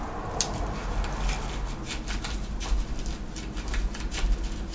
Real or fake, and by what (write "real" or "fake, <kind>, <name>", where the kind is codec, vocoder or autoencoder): real